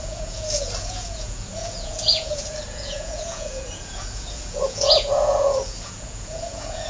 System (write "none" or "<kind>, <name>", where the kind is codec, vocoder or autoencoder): vocoder, Vocos